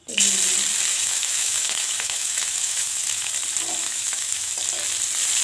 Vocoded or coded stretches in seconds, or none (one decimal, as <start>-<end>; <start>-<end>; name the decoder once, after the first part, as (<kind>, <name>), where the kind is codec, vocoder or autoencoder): 0.9-3.3 (autoencoder, DAC-VAE); 3.8-4.5